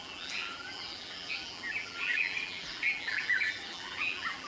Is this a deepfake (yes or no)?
yes